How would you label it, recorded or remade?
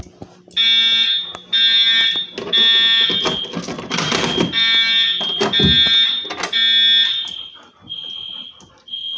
recorded